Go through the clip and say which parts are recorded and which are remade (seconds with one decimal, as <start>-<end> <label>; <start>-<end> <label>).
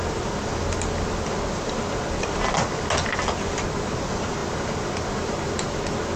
0.0-6.2 recorded